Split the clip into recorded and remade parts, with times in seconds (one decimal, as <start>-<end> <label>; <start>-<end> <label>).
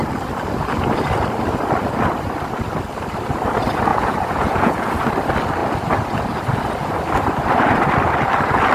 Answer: 0.0-3.9 recorded; 3.9-5.0 remade; 5.0-8.7 recorded